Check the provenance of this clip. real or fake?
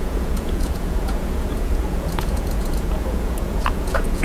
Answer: fake